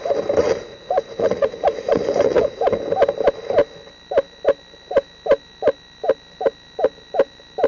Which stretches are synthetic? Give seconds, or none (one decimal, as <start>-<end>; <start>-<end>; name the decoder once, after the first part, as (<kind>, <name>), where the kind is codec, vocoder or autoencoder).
0.4-2.7 (vocoder, Vocos)